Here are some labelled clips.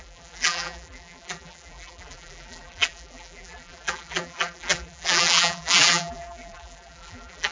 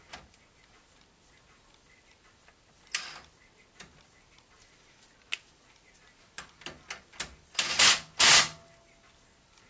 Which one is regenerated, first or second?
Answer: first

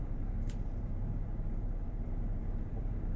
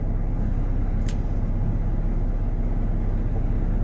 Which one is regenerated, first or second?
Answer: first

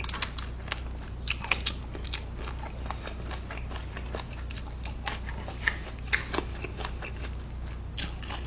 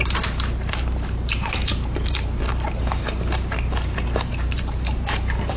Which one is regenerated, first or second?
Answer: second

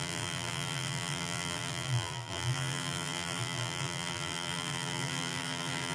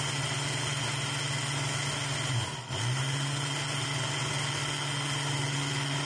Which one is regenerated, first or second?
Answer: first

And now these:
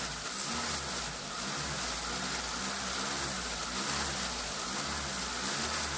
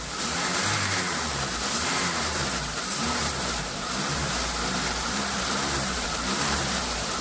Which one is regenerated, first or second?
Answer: second